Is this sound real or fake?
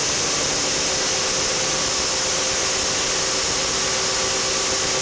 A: real